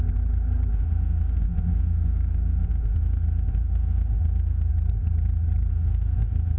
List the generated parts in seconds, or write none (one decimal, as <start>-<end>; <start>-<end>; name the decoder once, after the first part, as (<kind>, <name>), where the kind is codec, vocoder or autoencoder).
0.7-4.7 (autoencoder, DAC-VAE); 5.7-6.6